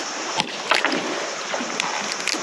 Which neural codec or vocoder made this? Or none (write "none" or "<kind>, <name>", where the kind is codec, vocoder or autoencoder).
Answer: none